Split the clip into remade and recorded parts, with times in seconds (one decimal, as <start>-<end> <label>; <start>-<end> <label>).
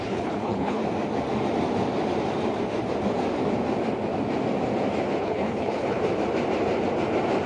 0.0-0.8 remade; 0.8-5.2 recorded; 5.2-6.0 remade; 6.0-7.5 recorded